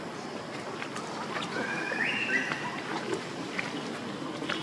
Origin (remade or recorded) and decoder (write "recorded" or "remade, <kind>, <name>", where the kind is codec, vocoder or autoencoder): recorded